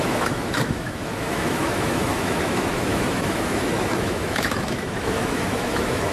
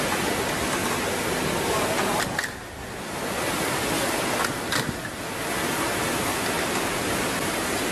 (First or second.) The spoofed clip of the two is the first